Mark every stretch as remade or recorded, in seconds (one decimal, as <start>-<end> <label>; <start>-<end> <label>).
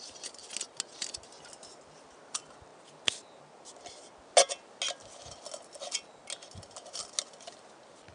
0.0-8.1 recorded